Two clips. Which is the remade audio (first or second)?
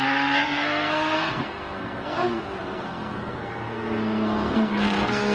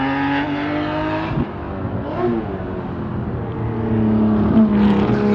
first